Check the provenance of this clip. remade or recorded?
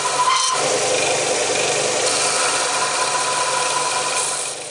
recorded